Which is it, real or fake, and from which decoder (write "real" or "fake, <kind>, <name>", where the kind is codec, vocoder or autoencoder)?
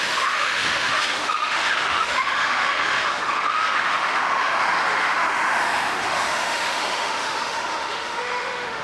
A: fake, autoencoder, DAC-VAE